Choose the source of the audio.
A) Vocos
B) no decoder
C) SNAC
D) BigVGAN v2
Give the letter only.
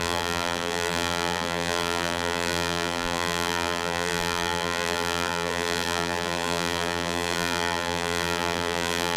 D